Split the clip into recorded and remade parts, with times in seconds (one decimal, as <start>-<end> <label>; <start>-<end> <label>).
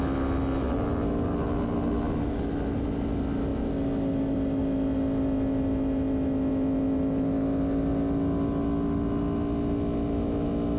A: 0.0-10.8 recorded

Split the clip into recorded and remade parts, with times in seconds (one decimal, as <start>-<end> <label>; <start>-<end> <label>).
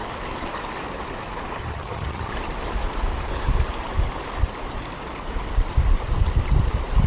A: 0.0-1.6 recorded; 1.6-2.3 remade; 2.3-7.1 recorded